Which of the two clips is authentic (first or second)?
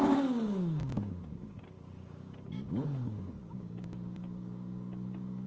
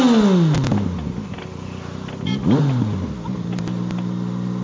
second